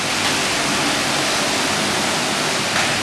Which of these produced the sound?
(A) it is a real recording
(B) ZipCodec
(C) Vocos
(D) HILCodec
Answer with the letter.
A